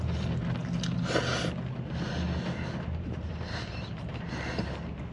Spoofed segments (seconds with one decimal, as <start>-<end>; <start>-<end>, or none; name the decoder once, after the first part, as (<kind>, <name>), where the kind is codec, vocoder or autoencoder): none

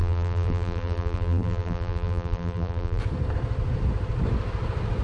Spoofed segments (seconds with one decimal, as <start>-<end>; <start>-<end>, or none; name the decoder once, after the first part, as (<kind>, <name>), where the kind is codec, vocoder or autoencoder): 0.0-3.0 (vocoder, BigVGAN v2)

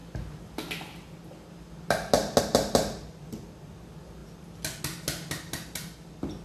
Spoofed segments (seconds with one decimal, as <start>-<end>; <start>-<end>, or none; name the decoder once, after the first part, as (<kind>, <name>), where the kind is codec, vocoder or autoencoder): none